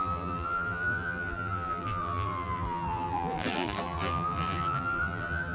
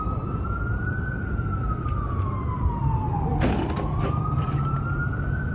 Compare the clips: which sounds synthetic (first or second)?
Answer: first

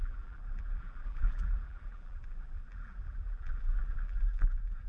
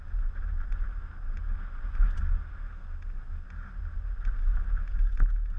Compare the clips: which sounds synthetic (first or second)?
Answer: first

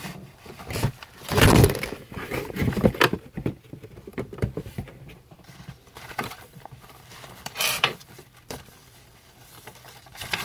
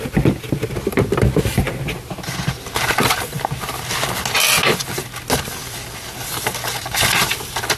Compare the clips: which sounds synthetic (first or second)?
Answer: first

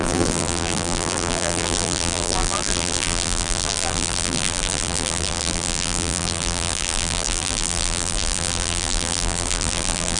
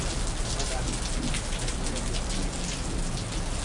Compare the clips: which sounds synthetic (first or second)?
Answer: first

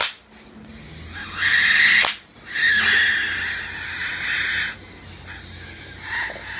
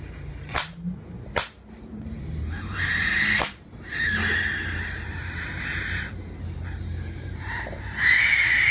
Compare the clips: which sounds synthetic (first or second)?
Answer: second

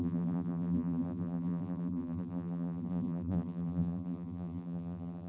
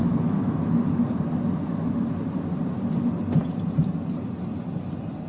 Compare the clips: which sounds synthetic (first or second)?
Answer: first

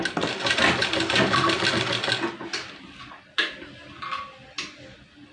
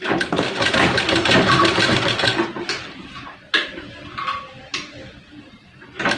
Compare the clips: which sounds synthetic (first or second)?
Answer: second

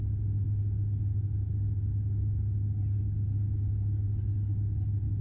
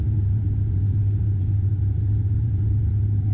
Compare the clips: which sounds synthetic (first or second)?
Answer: second